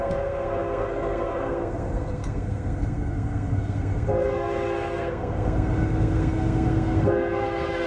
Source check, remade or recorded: remade